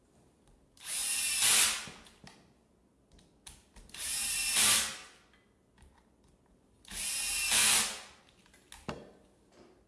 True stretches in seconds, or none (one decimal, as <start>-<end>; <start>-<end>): 0.0-9.9